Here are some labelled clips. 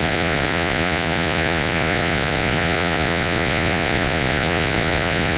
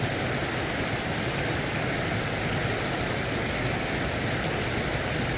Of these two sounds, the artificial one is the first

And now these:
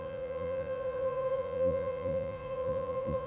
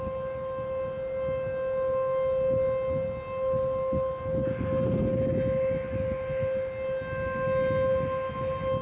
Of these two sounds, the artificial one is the first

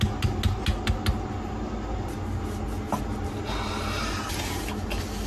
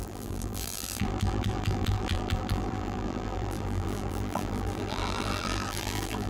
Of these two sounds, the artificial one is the second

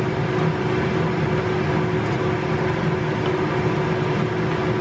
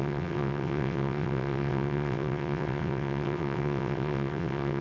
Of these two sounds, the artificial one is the second